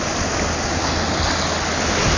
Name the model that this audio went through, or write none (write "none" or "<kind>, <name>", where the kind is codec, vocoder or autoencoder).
none